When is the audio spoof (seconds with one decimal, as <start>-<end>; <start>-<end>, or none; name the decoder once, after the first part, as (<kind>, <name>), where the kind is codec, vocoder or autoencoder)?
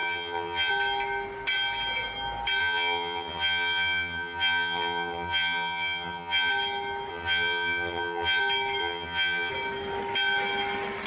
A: 0.0-0.7 (vocoder, HiFi-GAN); 2.6-6.5; 7.1-8.4; 8.8-9.5